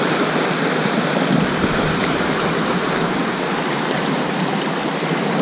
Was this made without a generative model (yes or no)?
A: yes